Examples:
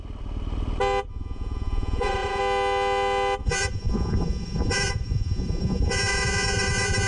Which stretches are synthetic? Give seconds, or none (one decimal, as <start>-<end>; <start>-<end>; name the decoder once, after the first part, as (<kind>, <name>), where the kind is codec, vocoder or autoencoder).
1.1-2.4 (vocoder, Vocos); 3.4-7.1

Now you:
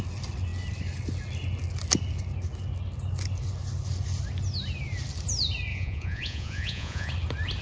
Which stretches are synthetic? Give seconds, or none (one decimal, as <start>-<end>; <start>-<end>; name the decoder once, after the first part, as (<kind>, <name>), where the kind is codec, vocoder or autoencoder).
5.7-7.1 (vocoder, Vocos)

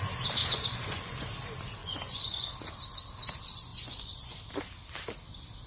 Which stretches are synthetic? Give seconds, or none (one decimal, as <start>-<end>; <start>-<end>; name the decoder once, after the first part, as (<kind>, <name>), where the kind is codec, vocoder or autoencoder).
0.4-1.3 (vocoder, Vocos); 1.8-2.5; 3.7-4.4